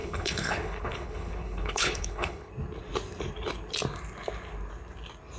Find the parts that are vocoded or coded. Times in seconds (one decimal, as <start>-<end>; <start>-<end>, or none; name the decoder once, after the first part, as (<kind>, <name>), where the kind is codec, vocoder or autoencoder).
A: 0.0-2.5 (codec, HILCodec)